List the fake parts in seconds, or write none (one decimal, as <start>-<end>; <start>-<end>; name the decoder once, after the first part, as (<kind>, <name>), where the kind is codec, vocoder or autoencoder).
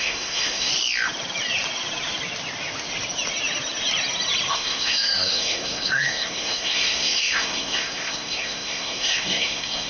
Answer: 0.0-0.7 (codec, SNAC); 4.5-9.9